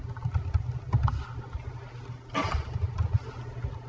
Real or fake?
real